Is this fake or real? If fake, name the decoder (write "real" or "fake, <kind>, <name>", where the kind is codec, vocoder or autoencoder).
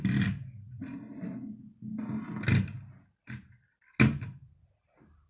real